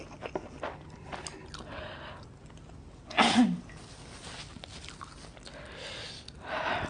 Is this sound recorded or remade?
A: recorded